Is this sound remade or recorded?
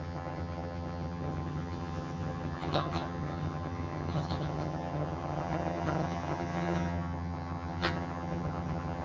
remade